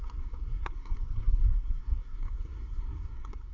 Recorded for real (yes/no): no